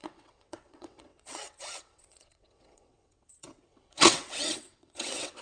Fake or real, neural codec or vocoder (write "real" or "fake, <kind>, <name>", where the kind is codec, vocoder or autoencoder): fake, vocoder, WaveNeXt